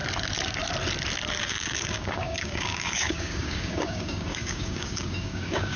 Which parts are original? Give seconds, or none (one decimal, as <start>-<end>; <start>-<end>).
0.0-1.4